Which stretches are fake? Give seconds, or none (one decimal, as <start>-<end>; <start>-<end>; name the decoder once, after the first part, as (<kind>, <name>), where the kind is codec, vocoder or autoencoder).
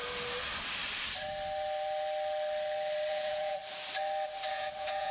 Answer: 3.1-3.6 (vocoder, Vocos); 4.5-5.1